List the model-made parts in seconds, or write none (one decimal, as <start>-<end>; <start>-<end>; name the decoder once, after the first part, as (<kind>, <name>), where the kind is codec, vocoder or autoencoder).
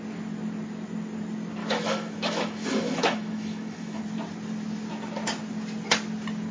1.6-4.0 (autoencoder, DAC-VAE)